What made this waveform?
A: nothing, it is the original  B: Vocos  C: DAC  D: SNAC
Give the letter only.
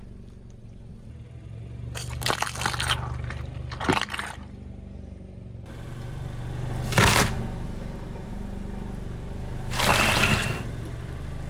A